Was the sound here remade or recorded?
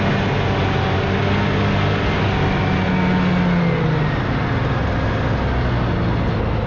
recorded